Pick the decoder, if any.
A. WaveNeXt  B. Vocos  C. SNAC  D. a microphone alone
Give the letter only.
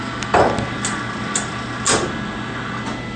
D